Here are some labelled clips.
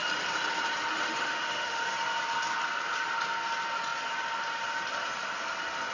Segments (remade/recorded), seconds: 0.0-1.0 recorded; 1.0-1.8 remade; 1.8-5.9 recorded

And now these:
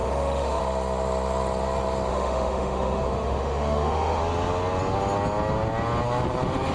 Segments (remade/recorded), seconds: 0.0-0.6 remade; 0.6-2.1 recorded; 2.1-4.2 remade; 4.2-6.7 recorded

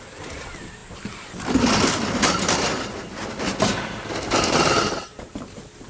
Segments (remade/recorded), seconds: 0.0-5.9 recorded

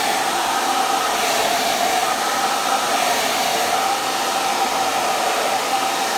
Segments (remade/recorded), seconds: 0.0-6.2 recorded